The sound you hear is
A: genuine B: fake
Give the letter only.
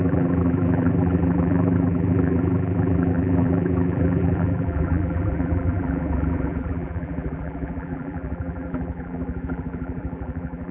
B